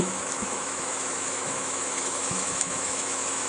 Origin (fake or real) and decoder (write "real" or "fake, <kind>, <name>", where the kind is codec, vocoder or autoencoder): fake, autoencoder, DAC-VAE